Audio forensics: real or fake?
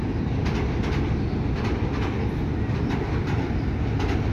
real